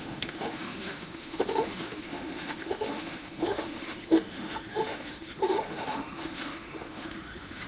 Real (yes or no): no